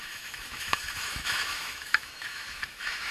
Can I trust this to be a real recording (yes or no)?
no